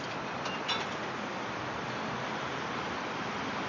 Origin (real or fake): real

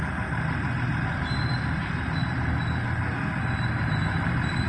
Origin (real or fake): real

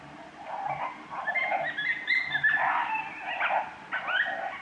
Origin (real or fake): real